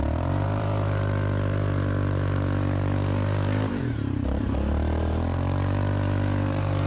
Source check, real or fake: fake